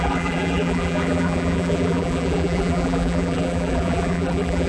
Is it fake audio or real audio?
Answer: fake